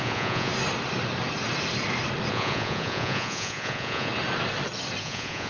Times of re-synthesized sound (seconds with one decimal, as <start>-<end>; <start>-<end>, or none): 0.0-0.5; 2.3-4.1; 5.0-5.5